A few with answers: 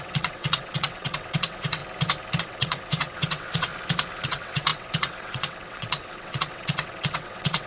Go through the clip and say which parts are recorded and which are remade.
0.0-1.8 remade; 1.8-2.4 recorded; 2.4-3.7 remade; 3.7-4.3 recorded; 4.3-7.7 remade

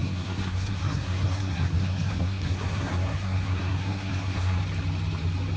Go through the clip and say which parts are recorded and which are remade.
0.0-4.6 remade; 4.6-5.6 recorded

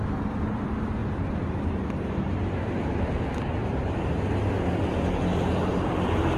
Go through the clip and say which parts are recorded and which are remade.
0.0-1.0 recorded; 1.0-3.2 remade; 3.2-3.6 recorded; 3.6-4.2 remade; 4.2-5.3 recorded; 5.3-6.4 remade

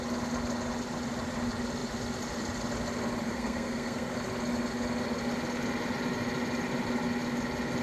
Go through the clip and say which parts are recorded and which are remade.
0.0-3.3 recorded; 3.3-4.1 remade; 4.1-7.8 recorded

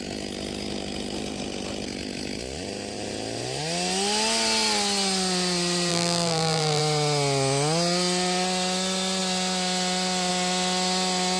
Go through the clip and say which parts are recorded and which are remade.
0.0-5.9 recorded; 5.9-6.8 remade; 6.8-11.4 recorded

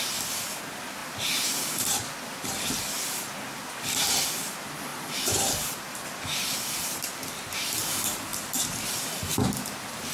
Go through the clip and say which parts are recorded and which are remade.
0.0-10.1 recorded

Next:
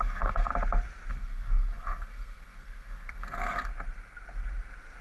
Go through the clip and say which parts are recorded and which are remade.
0.0-0.5 remade; 0.5-1.1 recorded; 1.1-3.7 remade; 3.7-5.0 recorded

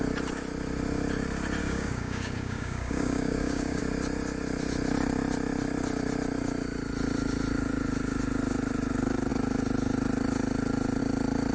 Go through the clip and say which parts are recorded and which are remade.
0.0-1.6 recorded; 1.6-3.8 remade; 3.8-11.5 recorded